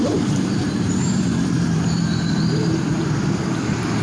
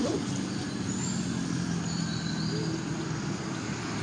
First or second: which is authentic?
second